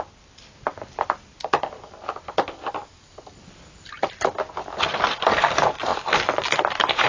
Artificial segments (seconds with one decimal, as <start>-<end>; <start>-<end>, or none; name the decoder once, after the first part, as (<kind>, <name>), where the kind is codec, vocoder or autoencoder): none